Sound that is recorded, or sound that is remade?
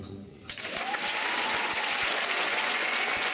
remade